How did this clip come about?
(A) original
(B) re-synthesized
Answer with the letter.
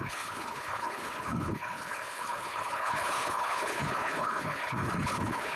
B